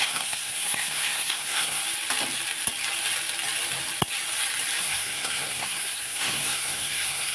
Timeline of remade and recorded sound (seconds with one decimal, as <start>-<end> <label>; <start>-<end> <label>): 0.0-1.8 remade; 1.8-4.8 recorded; 4.8-7.3 remade